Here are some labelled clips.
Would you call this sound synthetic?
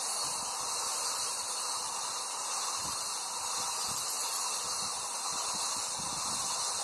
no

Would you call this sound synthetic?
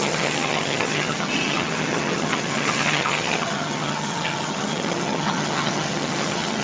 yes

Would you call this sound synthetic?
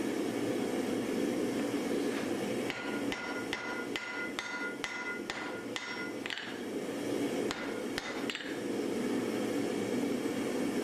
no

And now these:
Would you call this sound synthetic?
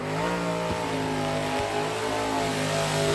no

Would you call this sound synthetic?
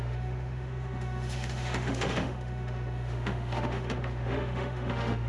yes